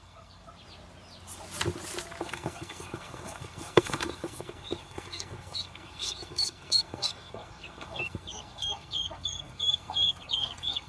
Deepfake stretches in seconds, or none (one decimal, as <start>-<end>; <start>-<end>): 0.0-0.4; 2.2-10.9